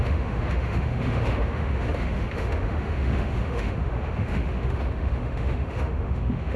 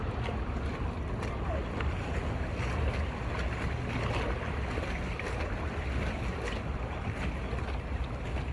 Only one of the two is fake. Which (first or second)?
first